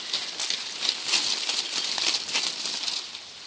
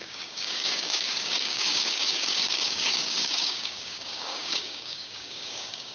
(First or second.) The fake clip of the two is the second